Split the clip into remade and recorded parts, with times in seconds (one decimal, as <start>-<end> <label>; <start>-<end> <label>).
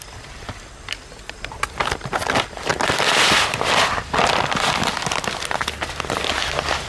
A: 0.0-6.9 recorded